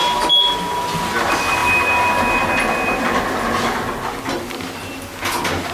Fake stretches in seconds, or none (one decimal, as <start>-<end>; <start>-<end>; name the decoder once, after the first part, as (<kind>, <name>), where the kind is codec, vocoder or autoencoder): none